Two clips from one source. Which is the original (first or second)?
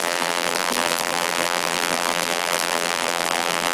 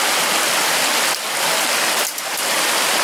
second